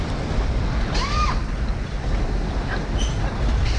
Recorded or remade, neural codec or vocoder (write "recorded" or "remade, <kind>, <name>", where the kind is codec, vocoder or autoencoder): recorded